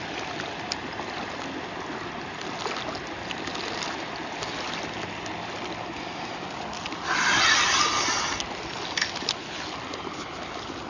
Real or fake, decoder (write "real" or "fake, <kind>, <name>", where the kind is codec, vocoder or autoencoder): real